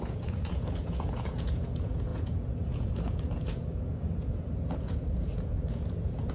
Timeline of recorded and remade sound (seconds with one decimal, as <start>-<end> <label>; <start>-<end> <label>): 0.0-6.3 remade